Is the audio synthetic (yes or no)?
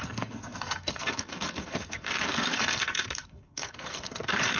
yes